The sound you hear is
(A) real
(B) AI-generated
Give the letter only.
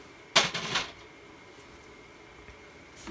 A